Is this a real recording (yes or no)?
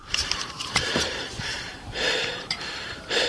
no